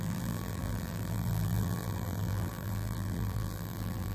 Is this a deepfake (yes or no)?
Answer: yes